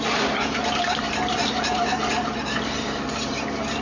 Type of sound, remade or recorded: remade